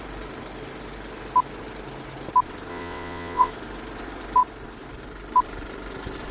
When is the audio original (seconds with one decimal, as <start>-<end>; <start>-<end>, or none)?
0.0-2.7; 3.5-6.3